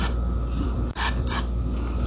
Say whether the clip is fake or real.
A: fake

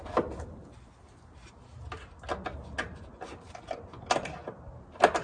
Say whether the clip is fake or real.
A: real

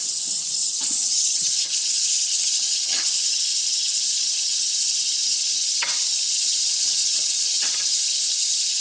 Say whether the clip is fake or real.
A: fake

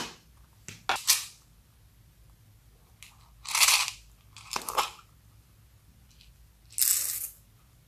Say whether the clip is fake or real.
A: real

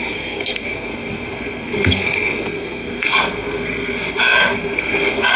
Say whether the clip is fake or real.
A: fake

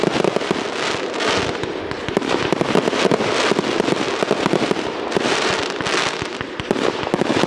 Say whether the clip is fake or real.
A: real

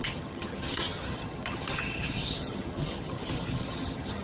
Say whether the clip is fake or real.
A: fake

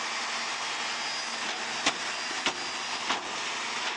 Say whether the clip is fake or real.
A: real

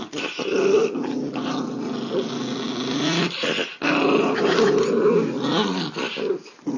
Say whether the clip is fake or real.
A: real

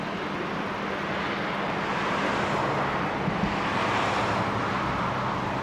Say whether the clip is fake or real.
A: real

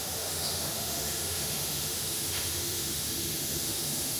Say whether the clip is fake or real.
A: fake